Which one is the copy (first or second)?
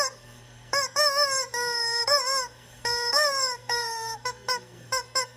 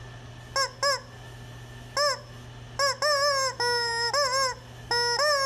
first